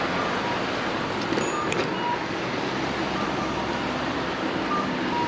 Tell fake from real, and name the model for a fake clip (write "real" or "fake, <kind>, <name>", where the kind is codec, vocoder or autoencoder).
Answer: real